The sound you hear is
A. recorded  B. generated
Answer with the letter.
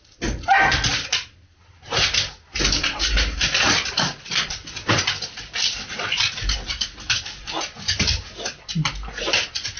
A